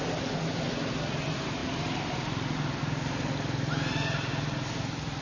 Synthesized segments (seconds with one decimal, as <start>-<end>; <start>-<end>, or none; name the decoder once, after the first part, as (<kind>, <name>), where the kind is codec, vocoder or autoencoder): none